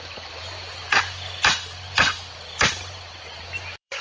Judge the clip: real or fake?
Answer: fake